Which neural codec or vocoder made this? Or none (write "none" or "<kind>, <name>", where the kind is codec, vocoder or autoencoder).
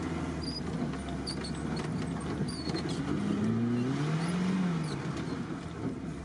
none